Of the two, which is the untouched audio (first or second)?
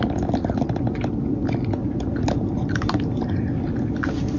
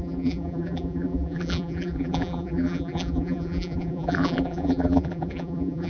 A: first